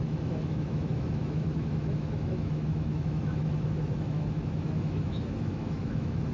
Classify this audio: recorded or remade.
remade